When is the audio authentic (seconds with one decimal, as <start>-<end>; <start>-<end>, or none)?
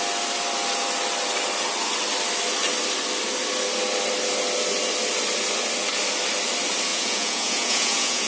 0.0-6.9